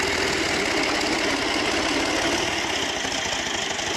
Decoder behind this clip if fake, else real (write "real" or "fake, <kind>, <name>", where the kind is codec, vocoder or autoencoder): real